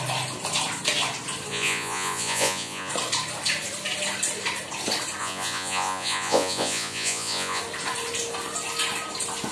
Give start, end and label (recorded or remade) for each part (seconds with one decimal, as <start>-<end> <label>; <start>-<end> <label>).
0.0-1.5 recorded; 1.5-2.9 remade; 2.9-5.2 recorded; 5.2-7.6 remade; 7.6-9.5 recorded

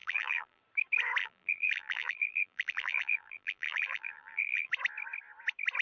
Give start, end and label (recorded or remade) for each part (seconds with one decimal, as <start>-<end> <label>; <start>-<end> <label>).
0.0-0.6 remade; 0.6-1.2 recorded; 1.2-4.7 remade; 4.7-5.8 recorded

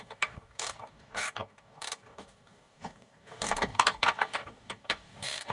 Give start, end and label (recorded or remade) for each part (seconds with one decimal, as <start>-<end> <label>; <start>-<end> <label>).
0.0-5.5 remade

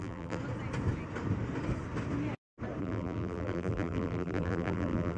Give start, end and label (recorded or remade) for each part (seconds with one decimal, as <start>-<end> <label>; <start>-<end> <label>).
0.0-0.4 remade; 0.4-2.8 recorded; 2.8-5.2 remade